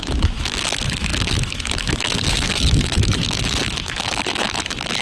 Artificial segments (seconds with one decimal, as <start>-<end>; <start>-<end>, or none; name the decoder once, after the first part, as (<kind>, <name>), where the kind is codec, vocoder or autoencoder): 0.0-5.0 (autoencoder, DAC-VAE)